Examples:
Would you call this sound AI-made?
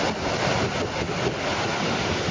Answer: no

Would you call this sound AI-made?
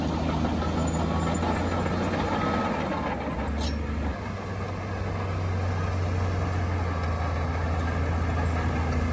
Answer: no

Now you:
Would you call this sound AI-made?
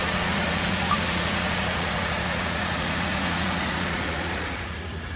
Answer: yes